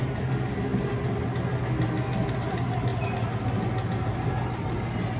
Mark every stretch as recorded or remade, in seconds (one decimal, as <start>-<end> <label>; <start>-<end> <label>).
0.0-5.2 recorded